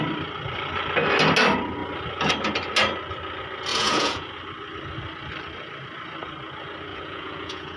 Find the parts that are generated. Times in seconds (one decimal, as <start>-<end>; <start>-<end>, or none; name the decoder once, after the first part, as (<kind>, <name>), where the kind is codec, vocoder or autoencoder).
3.7-4.3 (vocoder, Vocos); 6.9-7.8